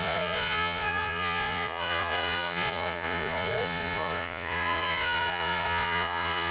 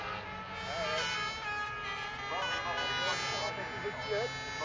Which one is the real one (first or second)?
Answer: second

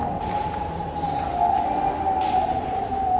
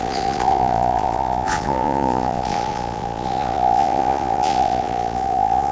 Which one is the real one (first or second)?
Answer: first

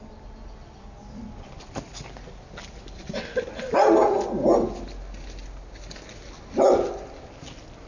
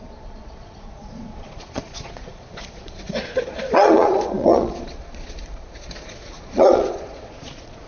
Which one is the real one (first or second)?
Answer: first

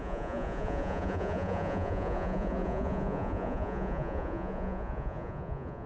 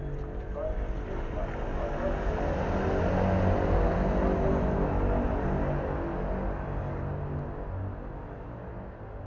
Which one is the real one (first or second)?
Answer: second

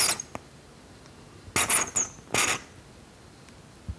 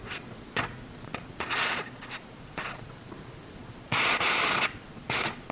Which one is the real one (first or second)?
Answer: first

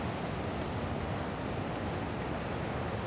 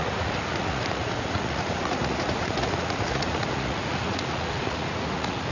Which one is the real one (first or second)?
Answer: first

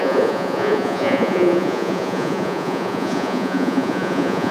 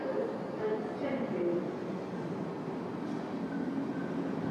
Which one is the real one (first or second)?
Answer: second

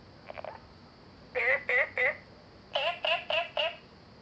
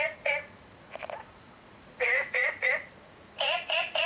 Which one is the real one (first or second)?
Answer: first